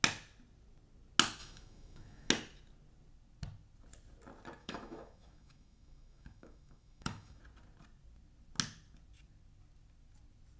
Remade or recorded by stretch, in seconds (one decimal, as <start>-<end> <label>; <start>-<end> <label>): 0.0-1.4 recorded; 1.4-2.3 remade; 2.3-4.6 recorded; 4.6-7.4 remade; 7.4-10.6 recorded